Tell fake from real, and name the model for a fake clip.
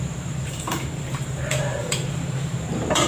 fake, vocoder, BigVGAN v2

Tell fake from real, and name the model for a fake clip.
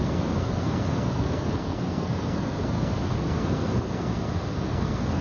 fake, codec, SNAC